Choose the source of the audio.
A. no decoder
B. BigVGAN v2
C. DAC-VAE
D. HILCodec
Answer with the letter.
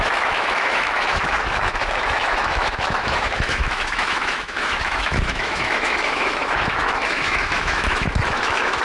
C